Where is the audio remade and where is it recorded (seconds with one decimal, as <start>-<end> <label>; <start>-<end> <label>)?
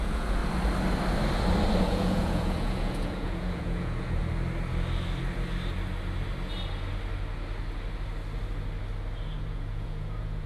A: 0.0-0.4 remade; 0.4-1.8 recorded; 1.8-4.2 remade; 4.2-9.4 recorded; 9.4-10.5 remade